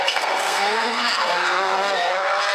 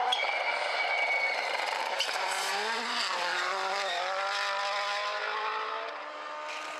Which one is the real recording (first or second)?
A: second